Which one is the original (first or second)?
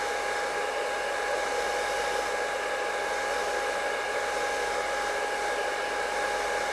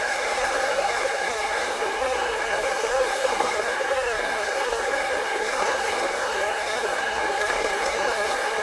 first